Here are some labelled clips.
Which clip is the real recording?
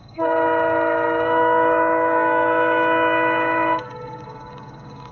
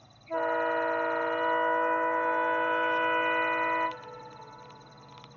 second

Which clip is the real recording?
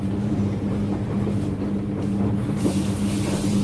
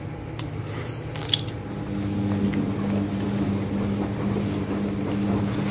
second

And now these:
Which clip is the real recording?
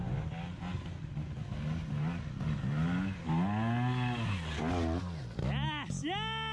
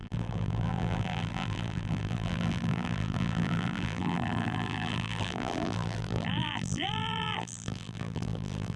first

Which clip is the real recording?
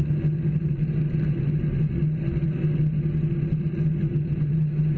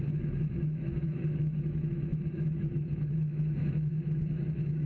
first